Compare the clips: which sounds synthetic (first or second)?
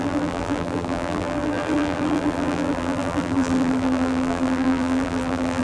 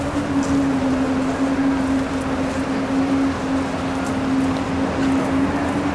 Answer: first